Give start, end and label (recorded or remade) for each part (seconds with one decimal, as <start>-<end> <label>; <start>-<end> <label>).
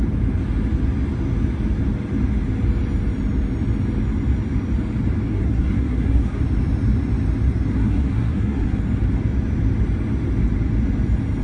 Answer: 0.0-5.3 recorded; 5.3-6.4 remade; 6.4-7.7 recorded; 7.7-8.8 remade; 8.8-11.4 recorded